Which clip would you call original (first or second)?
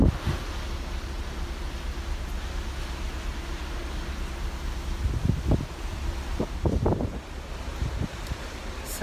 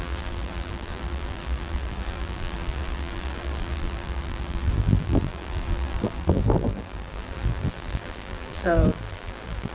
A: first